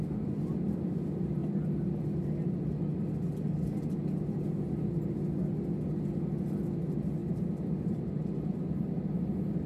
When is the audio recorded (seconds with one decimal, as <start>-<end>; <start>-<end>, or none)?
0.0-9.7